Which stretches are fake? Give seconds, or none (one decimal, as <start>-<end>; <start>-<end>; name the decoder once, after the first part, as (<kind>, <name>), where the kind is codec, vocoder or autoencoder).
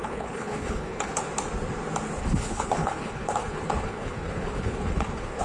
0.0-1.2 (codec, HILCodec); 2.2-5.4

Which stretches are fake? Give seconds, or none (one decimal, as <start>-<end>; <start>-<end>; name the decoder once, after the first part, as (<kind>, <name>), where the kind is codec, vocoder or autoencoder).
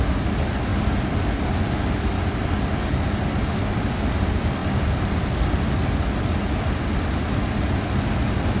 none